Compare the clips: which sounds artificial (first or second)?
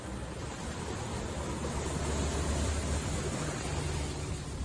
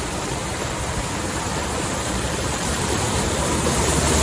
second